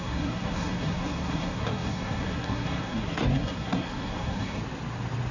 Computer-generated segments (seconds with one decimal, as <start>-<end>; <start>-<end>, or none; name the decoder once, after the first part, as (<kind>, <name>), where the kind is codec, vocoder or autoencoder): 0.0-4.6 (codec, SNAC)